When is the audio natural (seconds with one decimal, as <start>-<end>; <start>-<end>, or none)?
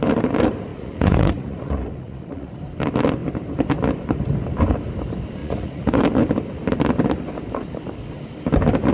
0.0-0.7; 2.5-5.4; 6.0-8.9